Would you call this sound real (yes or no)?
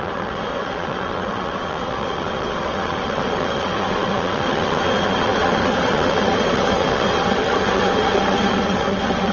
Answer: no